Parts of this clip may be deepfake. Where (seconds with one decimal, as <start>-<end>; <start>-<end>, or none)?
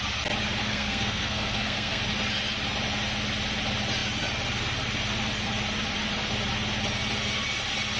0.6-2.0